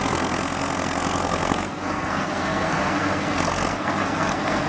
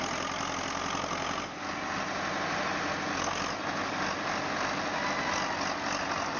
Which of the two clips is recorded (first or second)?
second